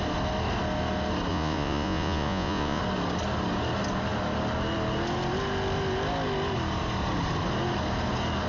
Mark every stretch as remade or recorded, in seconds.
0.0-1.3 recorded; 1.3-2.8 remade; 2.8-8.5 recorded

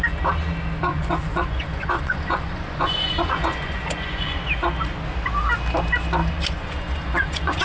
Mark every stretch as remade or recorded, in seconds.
0.0-0.9 recorded; 0.9-4.4 remade; 4.4-6.2 recorded; 6.2-7.6 remade

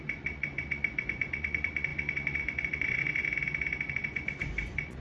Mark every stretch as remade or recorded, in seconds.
0.0-3.2 remade; 3.2-3.9 recorded; 3.9-5.0 remade

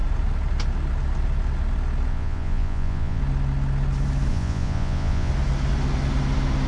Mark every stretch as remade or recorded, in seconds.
0.0-2.1 recorded; 2.1-3.2 remade; 3.2-4.3 recorded; 4.3-5.3 remade; 5.3-6.7 recorded